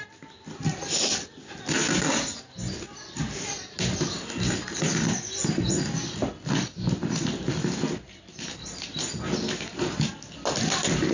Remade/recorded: recorded